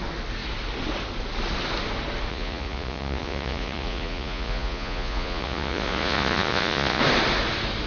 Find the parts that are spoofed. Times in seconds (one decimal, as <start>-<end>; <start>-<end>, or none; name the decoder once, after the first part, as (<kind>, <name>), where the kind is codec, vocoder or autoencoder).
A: 2.3-7.0 (vocoder, Vocos)